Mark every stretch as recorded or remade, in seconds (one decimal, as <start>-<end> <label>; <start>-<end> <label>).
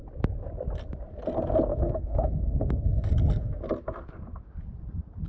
0.0-1.7 recorded; 1.7-3.6 remade; 3.6-5.3 recorded